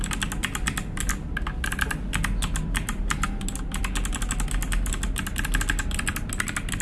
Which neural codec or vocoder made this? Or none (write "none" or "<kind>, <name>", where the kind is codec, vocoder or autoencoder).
none